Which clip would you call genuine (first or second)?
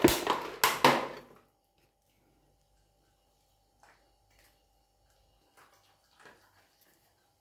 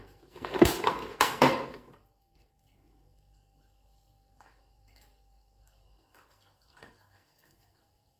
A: first